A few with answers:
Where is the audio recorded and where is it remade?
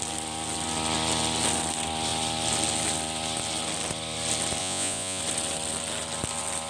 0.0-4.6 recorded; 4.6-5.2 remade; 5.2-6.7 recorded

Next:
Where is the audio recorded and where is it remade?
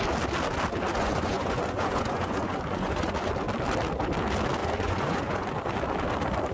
0.0-1.0 recorded; 1.0-3.3 remade; 3.3-4.6 recorded; 4.6-5.5 remade; 5.5-6.5 recorded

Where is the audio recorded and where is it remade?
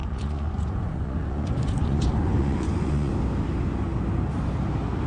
0.0-3.1 remade; 3.1-5.1 recorded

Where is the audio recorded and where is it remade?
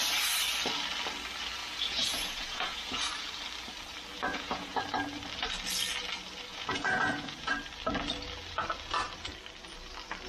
0.0-1.6 recorded; 1.6-3.1 remade; 3.1-4.3 recorded; 4.3-4.8 remade; 4.8-6.5 recorded; 6.5-7.5 remade; 7.5-10.3 recorded